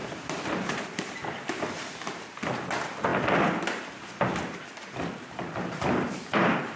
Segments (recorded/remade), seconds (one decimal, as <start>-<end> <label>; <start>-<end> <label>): 0.0-2.3 remade; 2.3-6.8 recorded